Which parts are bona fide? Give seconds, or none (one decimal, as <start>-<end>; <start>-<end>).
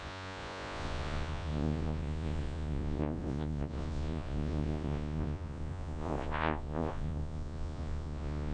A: none